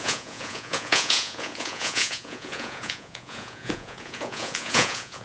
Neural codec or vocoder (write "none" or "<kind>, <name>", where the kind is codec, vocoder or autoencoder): vocoder, Vocos